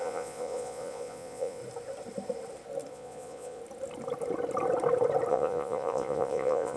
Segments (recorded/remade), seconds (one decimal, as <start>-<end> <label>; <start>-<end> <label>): 0.0-1.6 remade; 1.6-2.9 recorded; 2.9-3.6 remade; 3.6-5.3 recorded; 5.3-6.8 remade

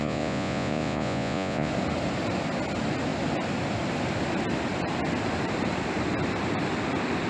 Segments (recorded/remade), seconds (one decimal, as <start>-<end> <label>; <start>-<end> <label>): 0.0-1.7 remade; 1.7-7.3 recorded

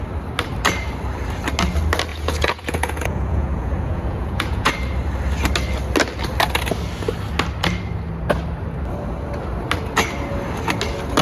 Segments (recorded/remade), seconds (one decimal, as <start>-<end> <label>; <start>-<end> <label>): 0.0-2.1 recorded; 2.1-4.7 remade; 4.7-11.2 recorded